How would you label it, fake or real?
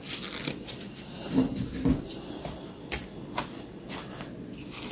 real